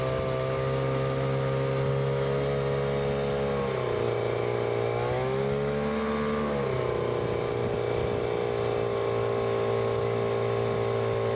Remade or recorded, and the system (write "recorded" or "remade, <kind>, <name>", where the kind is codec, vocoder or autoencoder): recorded